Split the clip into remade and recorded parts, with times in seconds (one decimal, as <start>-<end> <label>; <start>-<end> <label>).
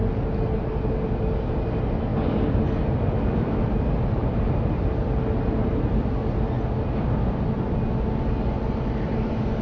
0.0-9.6 recorded